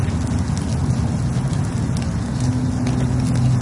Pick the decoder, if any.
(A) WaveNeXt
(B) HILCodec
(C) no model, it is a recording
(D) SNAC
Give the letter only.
C